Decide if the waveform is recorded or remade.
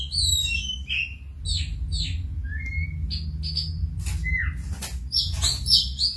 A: recorded